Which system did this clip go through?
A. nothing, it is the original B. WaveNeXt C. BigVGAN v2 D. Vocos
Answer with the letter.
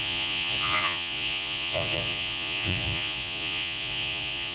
D